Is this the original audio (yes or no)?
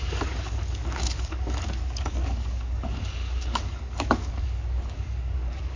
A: no